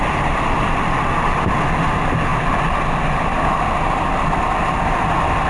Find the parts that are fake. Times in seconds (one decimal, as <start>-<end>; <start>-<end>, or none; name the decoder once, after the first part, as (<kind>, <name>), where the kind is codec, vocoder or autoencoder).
none